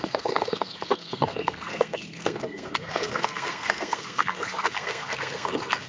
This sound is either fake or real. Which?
fake